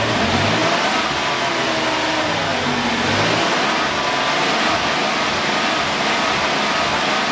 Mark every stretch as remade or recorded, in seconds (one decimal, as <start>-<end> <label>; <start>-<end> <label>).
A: 0.0-7.3 recorded